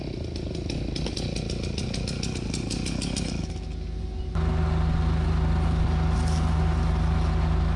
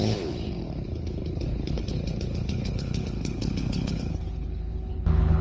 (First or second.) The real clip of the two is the first